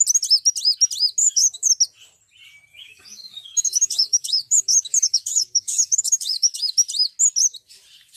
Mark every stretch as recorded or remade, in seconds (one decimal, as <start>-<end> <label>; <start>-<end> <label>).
0.0-1.2 recorded; 1.2-1.7 remade; 1.7-2.7 recorded; 2.7-6.6 remade; 6.6-8.2 recorded